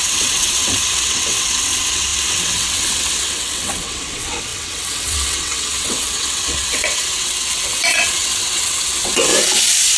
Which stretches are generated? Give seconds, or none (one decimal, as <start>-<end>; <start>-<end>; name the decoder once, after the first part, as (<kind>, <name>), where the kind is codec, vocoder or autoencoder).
0.0-9.3 (vocoder, WaveNeXt)